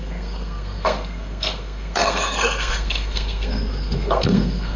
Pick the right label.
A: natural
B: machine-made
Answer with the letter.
B